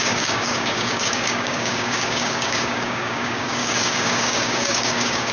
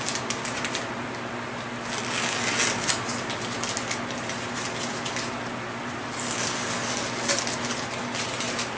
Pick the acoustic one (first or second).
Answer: second